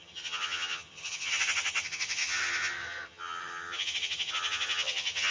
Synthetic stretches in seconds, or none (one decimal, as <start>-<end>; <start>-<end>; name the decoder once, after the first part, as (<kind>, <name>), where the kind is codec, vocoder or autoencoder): 0.0-5.3 (vocoder, HiFi-GAN)